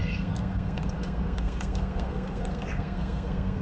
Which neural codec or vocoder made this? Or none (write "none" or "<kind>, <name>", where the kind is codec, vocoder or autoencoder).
codec, SNAC